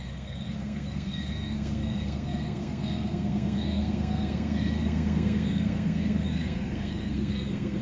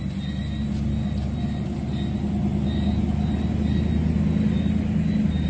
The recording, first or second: second